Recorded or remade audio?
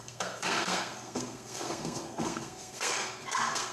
remade